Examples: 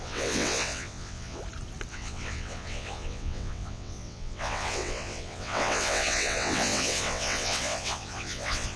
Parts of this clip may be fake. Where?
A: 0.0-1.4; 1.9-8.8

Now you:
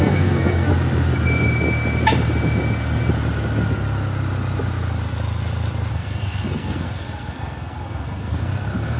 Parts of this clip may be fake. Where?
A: 0.0-0.7; 5.9-9.0